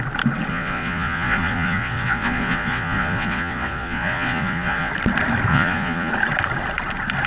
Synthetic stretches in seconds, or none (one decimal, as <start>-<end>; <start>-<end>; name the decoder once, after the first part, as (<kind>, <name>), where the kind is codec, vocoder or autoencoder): 0.5-4.9 (vocoder, Vocos); 5.5-6.1